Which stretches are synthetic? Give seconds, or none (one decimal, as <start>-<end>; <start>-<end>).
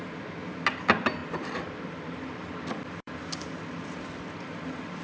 1.2-4.2